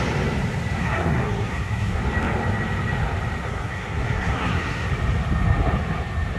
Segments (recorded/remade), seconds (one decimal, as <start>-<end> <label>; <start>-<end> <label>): 0.0-0.8 recorded; 0.8-2.0 remade; 2.0-3.4 recorded; 3.4-4.9 remade; 4.9-6.4 recorded